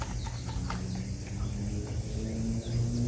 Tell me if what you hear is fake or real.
real